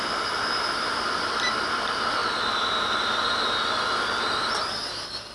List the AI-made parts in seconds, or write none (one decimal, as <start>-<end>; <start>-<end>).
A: 0.0-2.2; 4.7-5.3